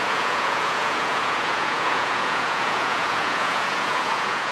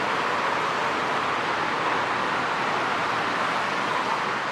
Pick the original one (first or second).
second